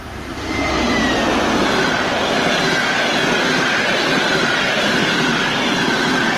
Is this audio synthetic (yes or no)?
no